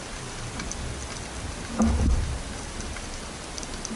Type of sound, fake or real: real